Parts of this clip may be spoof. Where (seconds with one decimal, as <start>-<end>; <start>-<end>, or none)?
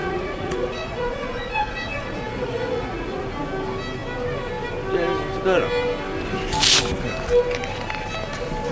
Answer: 0.0-3.2